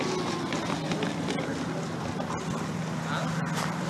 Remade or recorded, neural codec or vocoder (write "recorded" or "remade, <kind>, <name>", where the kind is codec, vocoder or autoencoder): recorded